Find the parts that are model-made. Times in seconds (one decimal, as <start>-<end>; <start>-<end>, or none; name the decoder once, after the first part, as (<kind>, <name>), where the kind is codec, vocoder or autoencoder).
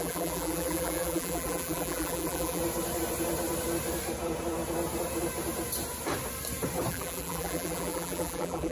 0.0-2.6 (vocoder, BigVGAN v2); 6.9-8.7